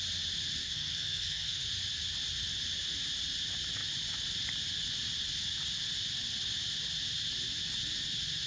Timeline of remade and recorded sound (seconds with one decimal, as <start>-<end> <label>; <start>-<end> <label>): 0.0-0.6 recorded; 0.6-1.6 remade; 1.6-8.5 recorded